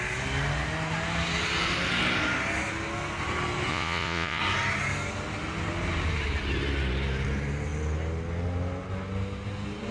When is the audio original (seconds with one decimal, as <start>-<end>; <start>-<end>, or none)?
0.0-3.7; 4.4-9.9